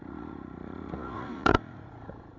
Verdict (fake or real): fake